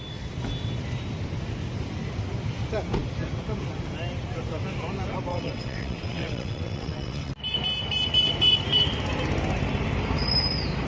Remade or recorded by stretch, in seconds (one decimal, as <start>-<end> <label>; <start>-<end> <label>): 0.0-5.3 recorded; 5.3-7.3 remade; 7.3-10.9 recorded

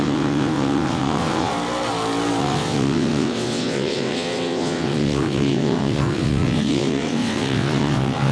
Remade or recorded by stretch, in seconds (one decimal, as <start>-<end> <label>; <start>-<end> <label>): 0.0-1.5 remade; 1.5-2.4 recorded; 2.4-8.3 remade

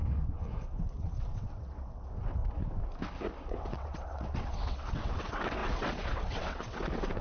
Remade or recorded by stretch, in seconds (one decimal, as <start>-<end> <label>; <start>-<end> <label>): 0.0-2.4 remade; 2.4-3.5 recorded; 3.5-7.2 remade